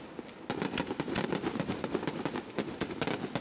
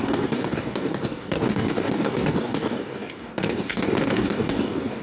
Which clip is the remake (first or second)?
second